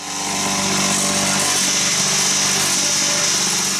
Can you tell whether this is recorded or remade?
recorded